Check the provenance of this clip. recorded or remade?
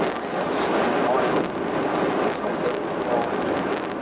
recorded